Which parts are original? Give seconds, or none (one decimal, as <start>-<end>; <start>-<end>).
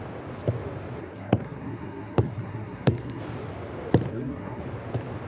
0.0-1.0; 3.2-4.1; 4.6-5.3